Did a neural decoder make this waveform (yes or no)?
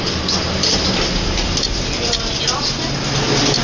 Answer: no